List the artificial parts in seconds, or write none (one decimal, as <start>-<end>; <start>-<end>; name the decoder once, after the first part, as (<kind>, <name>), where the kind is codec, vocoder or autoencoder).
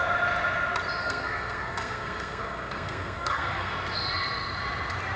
1.0-3.7 (codec, SNAC)